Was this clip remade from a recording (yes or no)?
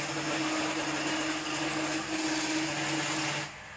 no